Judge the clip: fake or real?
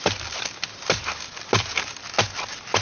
real